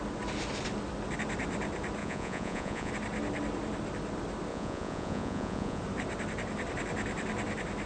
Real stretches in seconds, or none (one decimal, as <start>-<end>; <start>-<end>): 0.0-2.0; 2.9-4.5; 5.8-7.9